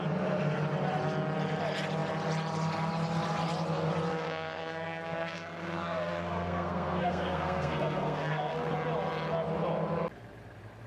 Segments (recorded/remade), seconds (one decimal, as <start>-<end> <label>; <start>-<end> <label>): 0.0-4.1 recorded; 4.1-8.7 remade; 8.7-10.9 recorded